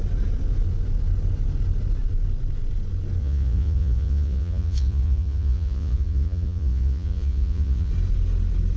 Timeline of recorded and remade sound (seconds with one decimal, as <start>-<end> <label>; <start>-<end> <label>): 0.0-3.2 recorded; 3.2-7.9 remade; 7.9-8.8 recorded